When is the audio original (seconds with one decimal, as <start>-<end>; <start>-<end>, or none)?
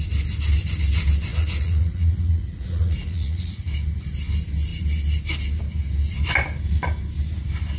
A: 0.0-1.3; 3.6-7.8